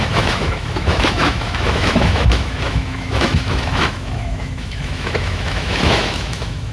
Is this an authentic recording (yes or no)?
no